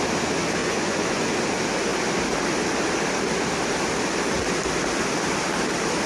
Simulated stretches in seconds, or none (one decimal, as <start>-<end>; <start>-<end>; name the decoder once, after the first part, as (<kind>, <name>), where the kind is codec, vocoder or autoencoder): 0.6-1.3 (vocoder, Vocos)